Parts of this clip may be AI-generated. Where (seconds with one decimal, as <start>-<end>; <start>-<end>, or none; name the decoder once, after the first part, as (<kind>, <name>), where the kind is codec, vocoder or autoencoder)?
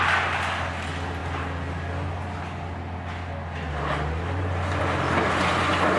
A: none